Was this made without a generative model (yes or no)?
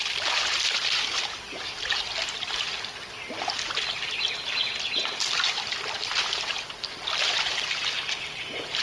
yes